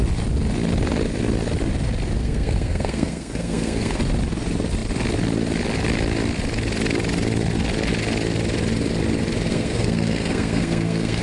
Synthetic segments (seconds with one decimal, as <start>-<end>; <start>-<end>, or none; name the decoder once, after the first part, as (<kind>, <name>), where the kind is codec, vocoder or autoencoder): 2.2-4.0 (codec, SNAC); 9.5-11.2